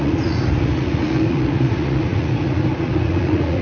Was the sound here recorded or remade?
remade